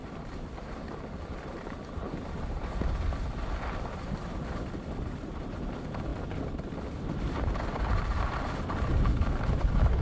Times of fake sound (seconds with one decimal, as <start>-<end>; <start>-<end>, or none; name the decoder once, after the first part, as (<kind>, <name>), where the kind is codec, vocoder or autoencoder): 0.0-1.6 (vocoder, BigVGAN v2); 2.1-2.8; 6.1-8.0